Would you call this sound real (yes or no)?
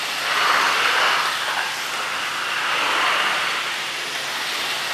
yes